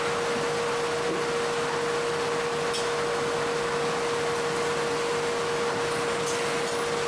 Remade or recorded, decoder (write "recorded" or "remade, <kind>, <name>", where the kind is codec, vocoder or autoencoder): recorded